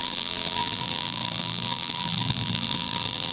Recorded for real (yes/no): no